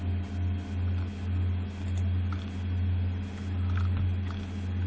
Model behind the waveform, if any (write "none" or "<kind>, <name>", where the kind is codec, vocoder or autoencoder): none